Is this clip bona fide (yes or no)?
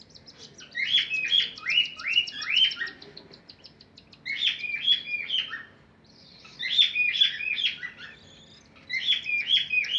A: yes